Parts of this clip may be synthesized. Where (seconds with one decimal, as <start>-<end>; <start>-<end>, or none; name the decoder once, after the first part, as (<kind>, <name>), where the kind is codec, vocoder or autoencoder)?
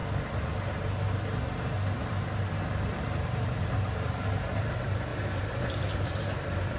2.9-5.1 (vocoder, BigVGAN v2); 5.8-6.8